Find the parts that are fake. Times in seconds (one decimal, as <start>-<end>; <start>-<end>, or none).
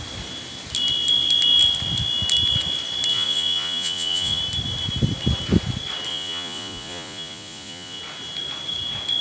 3.1-4.4; 6.1-8.0